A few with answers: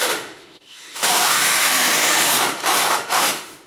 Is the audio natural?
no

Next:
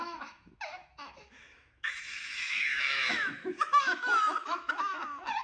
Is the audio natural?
no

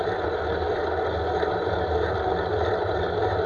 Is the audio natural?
yes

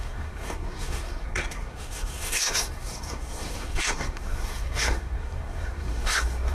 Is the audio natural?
no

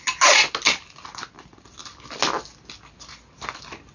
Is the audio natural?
yes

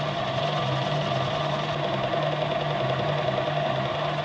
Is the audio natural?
yes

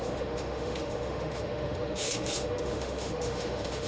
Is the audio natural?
no